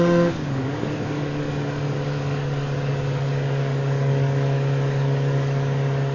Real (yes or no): no